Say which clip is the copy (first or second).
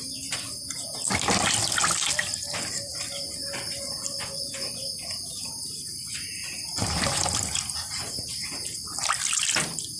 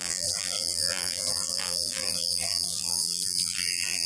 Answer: second